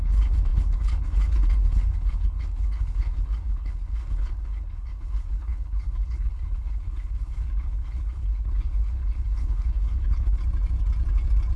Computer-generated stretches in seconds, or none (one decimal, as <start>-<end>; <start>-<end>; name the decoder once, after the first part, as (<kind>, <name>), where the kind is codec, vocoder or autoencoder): 0.0-10.4 (codec, HILCodec)